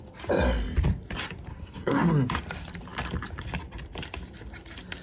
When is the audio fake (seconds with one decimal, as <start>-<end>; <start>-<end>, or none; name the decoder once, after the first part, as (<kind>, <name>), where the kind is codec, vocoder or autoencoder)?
1.5-2.1 (codec, SNAC)